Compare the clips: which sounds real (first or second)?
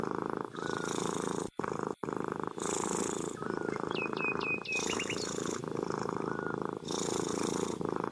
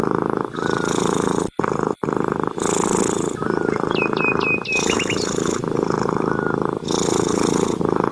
second